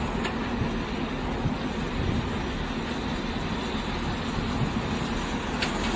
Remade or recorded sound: recorded